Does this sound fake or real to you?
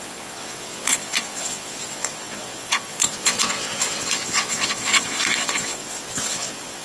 fake